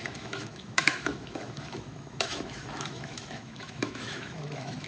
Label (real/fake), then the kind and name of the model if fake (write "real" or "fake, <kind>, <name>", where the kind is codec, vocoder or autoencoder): fake, autoencoder, DAC-VAE